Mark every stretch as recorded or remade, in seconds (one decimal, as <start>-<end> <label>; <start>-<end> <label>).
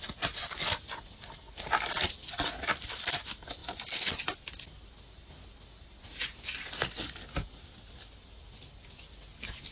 0.0-9.7 recorded